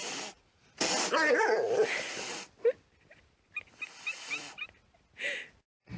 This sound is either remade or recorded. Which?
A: recorded